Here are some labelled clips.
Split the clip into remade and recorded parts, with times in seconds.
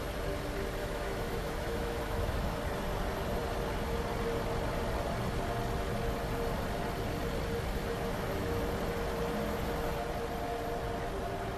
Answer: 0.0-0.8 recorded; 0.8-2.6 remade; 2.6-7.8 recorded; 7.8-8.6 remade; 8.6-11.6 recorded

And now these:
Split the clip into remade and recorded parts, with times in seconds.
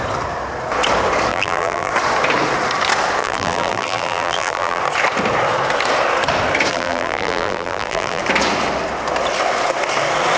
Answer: 0.0-1.3 recorded; 1.3-1.9 remade; 1.9-3.2 recorded; 3.2-4.8 remade; 4.8-6.7 recorded; 6.7-8.2 remade; 8.2-10.4 recorded